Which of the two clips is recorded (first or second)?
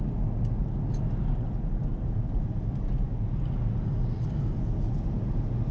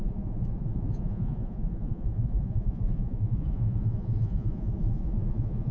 first